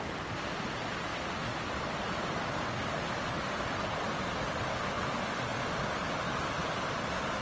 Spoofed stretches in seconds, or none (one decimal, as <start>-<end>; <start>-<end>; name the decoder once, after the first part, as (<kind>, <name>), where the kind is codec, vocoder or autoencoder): none